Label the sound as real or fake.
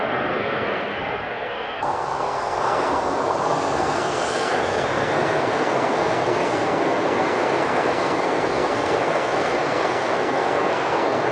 fake